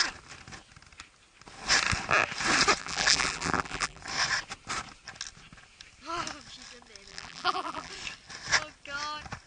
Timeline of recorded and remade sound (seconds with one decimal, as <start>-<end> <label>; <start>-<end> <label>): 0.0-2.8 recorded; 2.8-4.0 remade; 4.0-7.1 recorded; 7.1-7.9 remade; 7.9-9.5 recorded